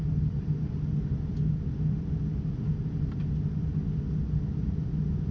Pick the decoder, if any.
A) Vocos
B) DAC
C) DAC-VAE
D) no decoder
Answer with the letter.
D